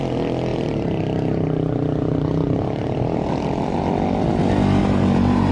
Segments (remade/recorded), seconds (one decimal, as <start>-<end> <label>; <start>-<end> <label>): 0.0-0.5 recorded; 0.5-3.8 remade; 3.8-4.8 recorded; 4.8-5.5 remade